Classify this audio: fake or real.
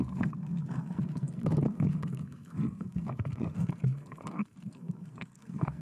fake